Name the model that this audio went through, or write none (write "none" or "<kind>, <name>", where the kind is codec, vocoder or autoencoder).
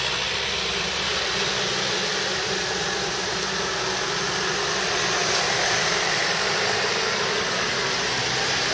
none